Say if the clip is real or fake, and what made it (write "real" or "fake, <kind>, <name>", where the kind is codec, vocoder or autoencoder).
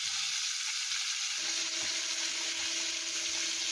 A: real